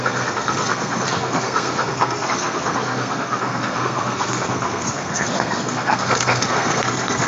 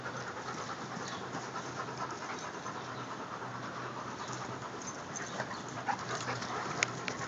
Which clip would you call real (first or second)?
second